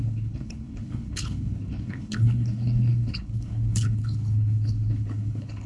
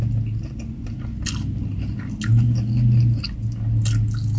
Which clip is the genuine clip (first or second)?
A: second